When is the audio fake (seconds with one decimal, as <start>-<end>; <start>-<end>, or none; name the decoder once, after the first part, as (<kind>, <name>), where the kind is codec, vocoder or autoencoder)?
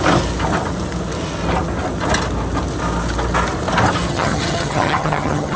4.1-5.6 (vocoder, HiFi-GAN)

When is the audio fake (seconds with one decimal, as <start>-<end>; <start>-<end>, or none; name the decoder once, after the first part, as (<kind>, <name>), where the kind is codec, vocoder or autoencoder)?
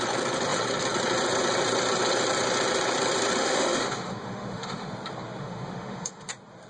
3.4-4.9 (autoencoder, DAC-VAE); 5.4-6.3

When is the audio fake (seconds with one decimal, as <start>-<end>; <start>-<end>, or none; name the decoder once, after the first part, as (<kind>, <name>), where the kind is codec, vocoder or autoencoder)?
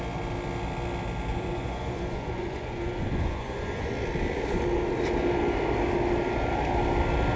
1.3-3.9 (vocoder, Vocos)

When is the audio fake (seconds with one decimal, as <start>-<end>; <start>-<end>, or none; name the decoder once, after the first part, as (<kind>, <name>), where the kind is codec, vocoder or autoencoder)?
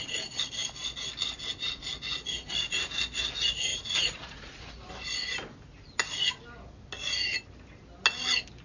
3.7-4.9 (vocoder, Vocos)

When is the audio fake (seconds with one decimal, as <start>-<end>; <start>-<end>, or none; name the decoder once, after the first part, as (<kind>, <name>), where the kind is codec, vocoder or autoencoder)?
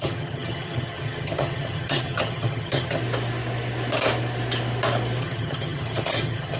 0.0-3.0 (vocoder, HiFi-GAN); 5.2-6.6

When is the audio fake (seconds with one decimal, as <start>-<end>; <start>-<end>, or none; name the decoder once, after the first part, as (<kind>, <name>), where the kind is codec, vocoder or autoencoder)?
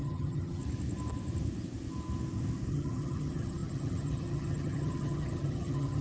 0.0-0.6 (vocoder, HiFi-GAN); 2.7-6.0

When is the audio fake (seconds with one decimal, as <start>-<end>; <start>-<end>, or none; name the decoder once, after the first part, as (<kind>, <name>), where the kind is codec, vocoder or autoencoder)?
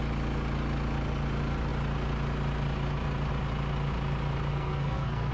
4.5-5.3 (codec, SNAC)